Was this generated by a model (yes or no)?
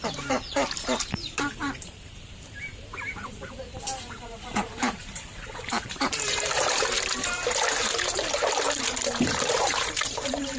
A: yes